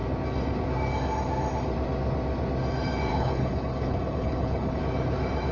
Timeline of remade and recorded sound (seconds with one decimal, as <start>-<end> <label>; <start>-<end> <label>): 0.0-3.1 recorded; 3.1-4.8 remade; 4.8-5.5 recorded